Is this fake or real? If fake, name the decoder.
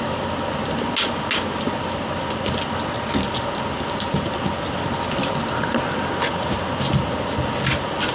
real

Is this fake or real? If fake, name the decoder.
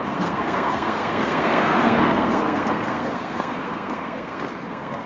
fake, codec, SNAC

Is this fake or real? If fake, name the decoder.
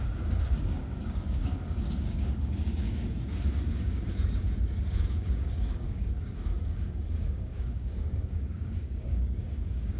fake, codec, DAC